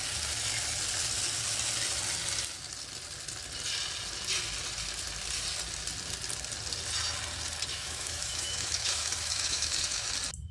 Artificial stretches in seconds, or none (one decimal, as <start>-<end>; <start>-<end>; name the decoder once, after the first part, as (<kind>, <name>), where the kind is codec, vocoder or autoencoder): 7.7-10.1 (autoencoder, DAC-VAE)